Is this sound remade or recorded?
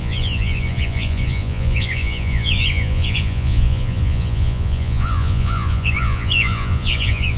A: remade